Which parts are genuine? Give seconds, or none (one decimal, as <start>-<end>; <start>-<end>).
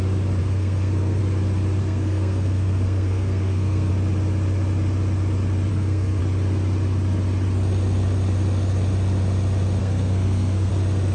0.0-0.4; 1.2-1.8; 3.9-5.7; 6.2-9.8; 10.7-11.1